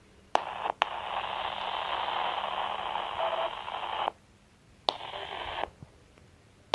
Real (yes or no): yes